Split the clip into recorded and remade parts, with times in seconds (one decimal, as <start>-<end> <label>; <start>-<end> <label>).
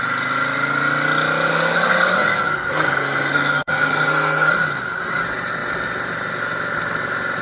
0.0-1.5 recorded; 1.5-4.5 remade; 4.5-7.4 recorded